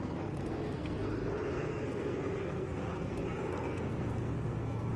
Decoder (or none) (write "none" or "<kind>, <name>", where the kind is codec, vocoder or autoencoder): codec, SNAC